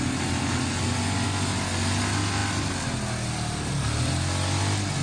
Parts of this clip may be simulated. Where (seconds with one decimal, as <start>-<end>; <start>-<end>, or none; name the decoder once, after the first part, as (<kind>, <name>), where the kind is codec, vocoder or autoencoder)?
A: none